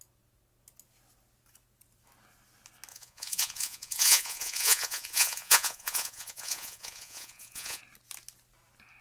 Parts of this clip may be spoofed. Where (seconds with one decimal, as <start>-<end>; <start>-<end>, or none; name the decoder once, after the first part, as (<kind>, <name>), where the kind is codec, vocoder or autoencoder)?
2.9-7.8 (vocoder, Vocos)